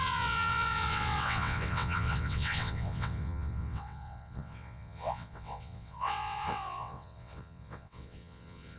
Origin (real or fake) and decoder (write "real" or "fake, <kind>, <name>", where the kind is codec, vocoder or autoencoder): fake, vocoder, WaveNeXt